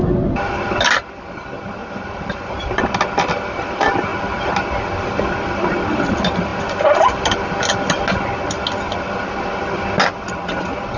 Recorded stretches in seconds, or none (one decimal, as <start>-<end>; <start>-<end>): 0.0-1.8; 2.8-11.0